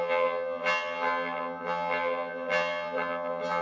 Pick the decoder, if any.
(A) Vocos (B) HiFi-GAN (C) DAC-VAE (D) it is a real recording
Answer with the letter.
B